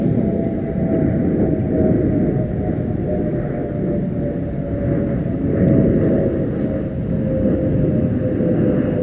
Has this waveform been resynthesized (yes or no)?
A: no